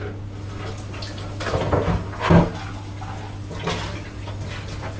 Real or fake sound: real